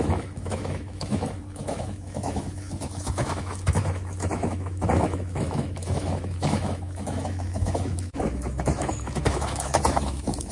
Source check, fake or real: fake